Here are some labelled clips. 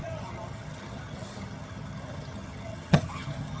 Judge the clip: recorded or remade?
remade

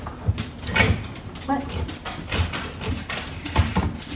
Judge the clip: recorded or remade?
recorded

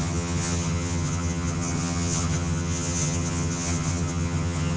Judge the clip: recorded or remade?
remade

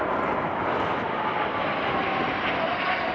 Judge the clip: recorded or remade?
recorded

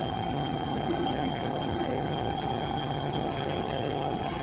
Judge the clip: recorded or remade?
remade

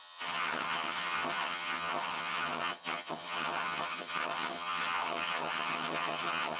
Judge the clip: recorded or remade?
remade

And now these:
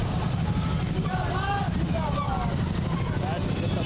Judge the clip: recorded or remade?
recorded